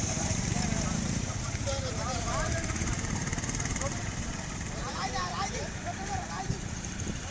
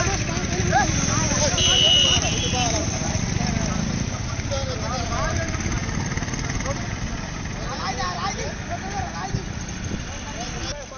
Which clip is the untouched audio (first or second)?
second